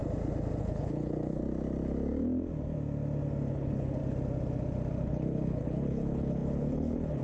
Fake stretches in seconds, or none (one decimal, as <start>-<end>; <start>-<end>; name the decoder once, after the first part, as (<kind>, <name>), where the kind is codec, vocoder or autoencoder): 0.6-1.4 (codec, HILCodec); 3.5-4.0; 5.0-7.2